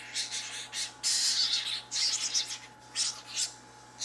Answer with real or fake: real